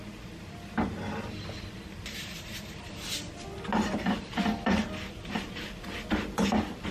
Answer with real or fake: real